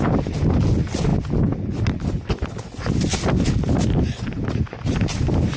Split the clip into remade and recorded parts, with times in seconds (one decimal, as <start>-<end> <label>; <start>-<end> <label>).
0.0-5.6 recorded